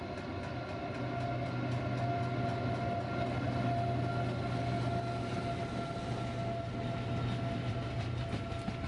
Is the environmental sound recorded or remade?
recorded